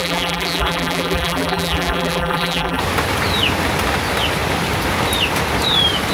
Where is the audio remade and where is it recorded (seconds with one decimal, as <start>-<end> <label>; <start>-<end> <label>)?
0.0-2.8 remade; 2.8-6.1 recorded